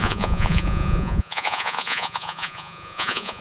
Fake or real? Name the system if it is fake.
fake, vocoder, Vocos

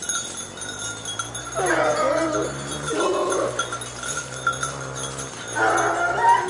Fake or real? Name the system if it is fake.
real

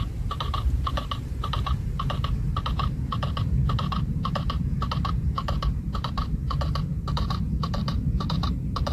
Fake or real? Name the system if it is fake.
fake, vocoder, BigVGAN v2